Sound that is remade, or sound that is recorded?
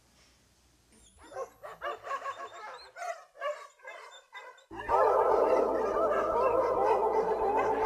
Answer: recorded